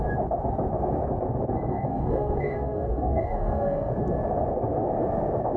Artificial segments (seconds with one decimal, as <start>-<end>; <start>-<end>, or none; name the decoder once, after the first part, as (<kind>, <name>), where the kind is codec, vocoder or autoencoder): 1.7-3.9 (codec, DAC)